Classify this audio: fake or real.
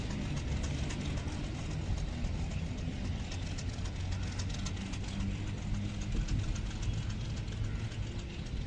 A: real